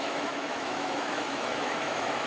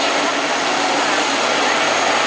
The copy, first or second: first